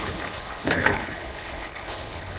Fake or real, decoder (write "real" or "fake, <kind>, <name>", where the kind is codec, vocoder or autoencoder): fake, codec, HILCodec